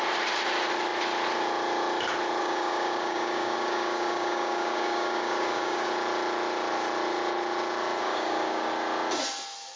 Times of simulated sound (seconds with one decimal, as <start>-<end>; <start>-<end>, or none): 2.4-5.9; 8.0-8.7